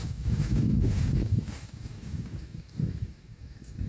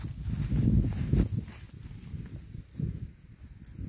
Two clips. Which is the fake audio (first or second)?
first